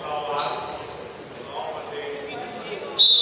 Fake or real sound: real